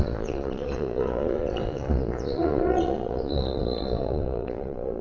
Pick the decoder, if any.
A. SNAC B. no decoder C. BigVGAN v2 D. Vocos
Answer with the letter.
D